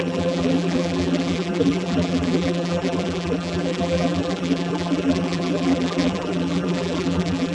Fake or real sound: fake